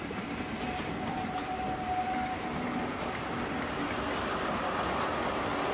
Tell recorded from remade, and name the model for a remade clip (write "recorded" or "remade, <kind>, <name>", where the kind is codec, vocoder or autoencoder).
recorded